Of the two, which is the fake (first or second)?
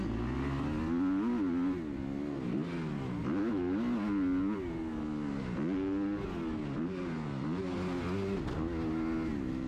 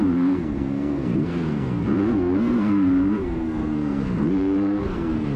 second